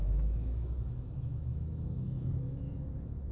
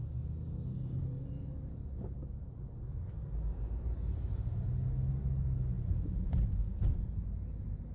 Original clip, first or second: second